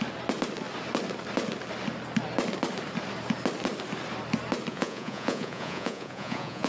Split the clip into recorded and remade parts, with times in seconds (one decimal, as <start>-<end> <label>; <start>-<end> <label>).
0.0-4.7 recorded; 4.7-6.7 remade

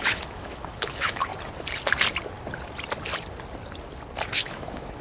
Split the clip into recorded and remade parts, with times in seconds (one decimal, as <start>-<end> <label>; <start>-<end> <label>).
0.0-1.3 remade; 1.3-4.3 recorded; 4.3-5.0 remade

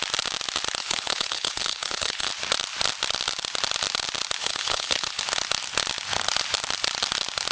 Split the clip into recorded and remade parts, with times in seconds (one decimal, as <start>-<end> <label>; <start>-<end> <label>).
0.0-0.8 recorded; 0.8-2.3 remade; 2.3-4.4 recorded; 4.4-5.2 remade; 5.2-7.5 recorded